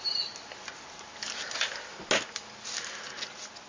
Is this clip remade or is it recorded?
recorded